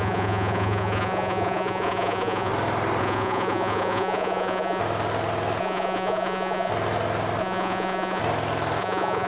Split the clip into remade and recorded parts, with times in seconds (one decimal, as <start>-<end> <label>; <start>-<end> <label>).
0.0-2.5 remade; 2.5-3.0 recorded; 3.0-4.8 remade; 4.8-5.6 recorded; 5.6-6.7 remade; 6.7-7.4 recorded; 7.4-8.2 remade; 8.2-8.8 recorded; 8.8-9.3 remade